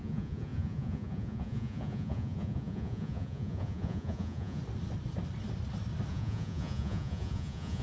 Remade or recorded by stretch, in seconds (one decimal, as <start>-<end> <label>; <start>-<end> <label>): 0.0-4.6 remade; 4.6-6.1 recorded; 6.1-7.8 remade